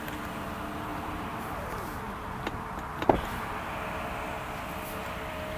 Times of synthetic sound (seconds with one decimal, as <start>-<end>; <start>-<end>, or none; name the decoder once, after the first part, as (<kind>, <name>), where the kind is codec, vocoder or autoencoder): 0.9-3.6 (vocoder, BigVGAN v2)